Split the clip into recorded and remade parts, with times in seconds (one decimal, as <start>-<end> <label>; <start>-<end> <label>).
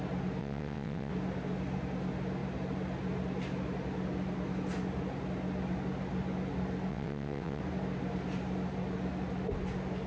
0.0-0.4 recorded; 0.4-1.1 remade; 1.1-6.9 recorded; 6.9-7.6 remade; 7.6-10.1 recorded